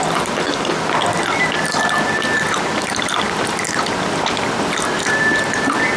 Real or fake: real